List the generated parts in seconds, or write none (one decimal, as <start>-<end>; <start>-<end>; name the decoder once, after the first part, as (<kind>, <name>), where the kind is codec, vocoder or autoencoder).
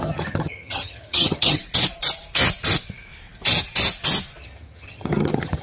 0.0-1.6 (vocoder, HiFi-GAN); 4.4-5.6